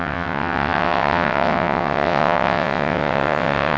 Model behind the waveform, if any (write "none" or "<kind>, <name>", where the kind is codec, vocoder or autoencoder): vocoder, WaveNeXt